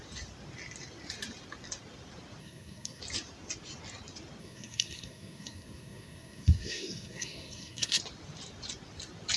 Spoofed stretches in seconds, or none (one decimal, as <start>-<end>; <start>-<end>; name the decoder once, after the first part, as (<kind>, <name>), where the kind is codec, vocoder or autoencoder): 2.4-3.0 (codec, SNAC); 4.4-8.0